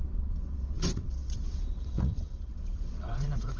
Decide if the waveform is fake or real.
fake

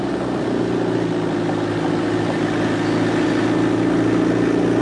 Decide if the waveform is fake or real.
real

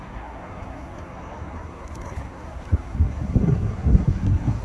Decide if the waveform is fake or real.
fake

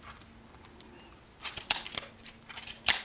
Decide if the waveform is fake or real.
real